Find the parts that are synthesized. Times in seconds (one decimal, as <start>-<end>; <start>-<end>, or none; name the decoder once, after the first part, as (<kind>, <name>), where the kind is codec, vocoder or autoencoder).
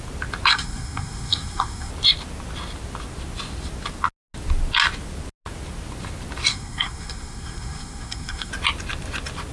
0.5-1.9 (codec, SNAC); 6.5-8.5